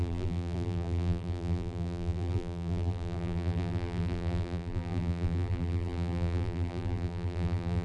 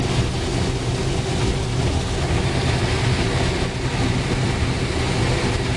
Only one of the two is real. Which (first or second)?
second